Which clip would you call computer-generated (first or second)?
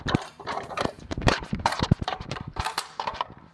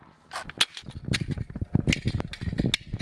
first